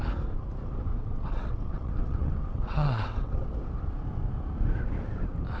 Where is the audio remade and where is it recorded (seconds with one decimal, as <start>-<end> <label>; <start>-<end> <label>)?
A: 0.0-0.9 recorded; 0.9-3.5 remade; 3.5-5.6 recorded

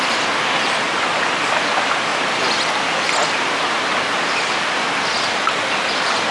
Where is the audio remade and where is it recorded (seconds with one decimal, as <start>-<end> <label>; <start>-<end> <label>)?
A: 0.0-6.3 recorded

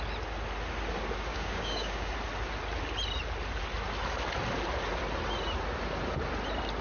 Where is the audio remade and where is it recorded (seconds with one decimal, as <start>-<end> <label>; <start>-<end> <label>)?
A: 0.0-1.3 recorded; 1.3-2.1 remade; 2.1-6.8 recorded

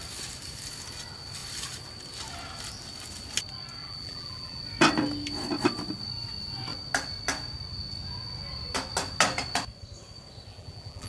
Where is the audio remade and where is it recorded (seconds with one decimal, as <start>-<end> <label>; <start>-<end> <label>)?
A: 0.0-3.8 recorded; 3.8-4.6 remade; 4.6-10.5 recorded; 10.5-11.1 remade

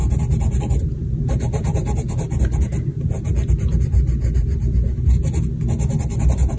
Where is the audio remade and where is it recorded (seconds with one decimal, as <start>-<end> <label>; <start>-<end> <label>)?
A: 0.0-6.6 recorded

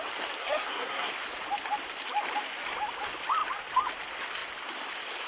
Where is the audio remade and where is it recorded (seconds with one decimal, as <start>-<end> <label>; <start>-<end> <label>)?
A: 0.0-0.4 recorded; 0.4-1.1 remade; 1.1-5.3 recorded

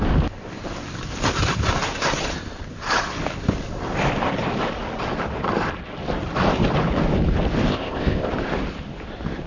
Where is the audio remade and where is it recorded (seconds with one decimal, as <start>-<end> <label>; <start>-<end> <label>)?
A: 0.0-7.7 recorded; 7.7-8.3 remade; 8.3-9.5 recorded

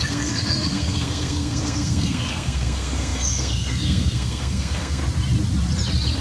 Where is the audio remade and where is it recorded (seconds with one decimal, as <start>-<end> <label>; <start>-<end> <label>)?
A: 0.0-5.0 remade; 5.0-6.2 recorded